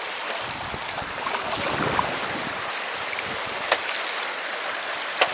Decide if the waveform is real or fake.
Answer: real